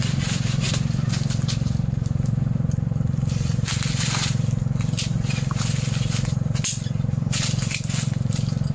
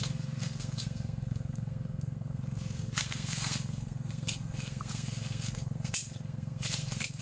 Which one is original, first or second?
first